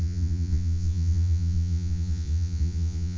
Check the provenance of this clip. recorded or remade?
remade